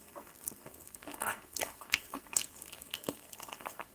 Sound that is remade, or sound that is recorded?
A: remade